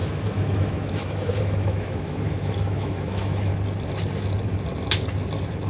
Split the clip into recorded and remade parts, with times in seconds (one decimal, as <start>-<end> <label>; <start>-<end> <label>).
0.0-3.5 remade; 3.5-5.7 recorded

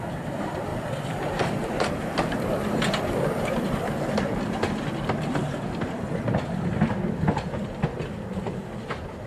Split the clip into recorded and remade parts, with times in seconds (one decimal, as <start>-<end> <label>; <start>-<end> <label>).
0.0-0.7 recorded; 0.7-1.9 remade; 1.9-9.3 recorded

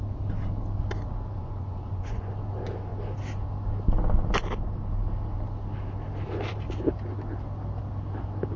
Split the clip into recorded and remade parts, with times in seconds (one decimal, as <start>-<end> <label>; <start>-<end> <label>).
0.0-1.4 recorded; 1.4-2.3 remade; 2.3-8.6 recorded

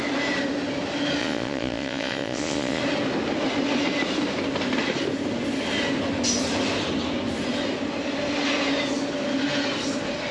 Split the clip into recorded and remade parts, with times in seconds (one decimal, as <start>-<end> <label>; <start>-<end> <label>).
0.0-1.2 recorded; 1.2-2.8 remade; 2.8-10.3 recorded

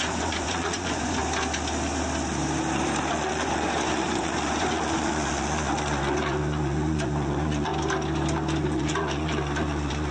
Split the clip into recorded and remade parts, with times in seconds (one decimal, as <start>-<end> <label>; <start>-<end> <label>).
0.0-1.2 remade; 1.2-3.1 recorded; 3.1-7.7 remade; 7.7-8.6 recorded; 8.6-10.1 remade

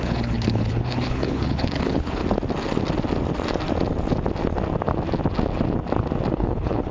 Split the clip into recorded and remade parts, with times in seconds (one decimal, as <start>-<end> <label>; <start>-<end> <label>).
0.0-2.2 remade; 2.2-6.3 recorded; 6.3-6.9 remade

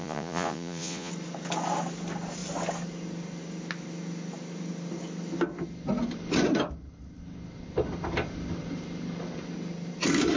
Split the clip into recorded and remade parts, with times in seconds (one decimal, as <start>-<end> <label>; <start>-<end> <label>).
0.0-1.1 remade; 1.1-10.4 recorded

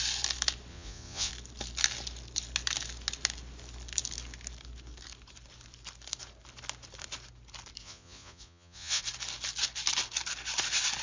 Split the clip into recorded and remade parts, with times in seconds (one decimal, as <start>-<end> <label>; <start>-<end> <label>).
0.0-0.7 recorded; 0.7-1.3 remade; 1.3-7.8 recorded; 7.8-9.0 remade; 9.0-11.0 recorded